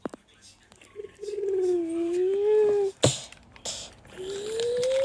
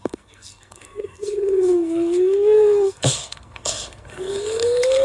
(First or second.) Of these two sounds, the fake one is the second